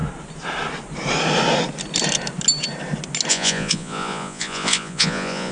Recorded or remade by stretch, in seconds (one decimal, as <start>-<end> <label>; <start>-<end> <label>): 0.0-3.3 recorded; 3.3-5.5 remade